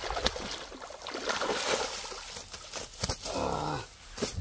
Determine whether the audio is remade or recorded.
recorded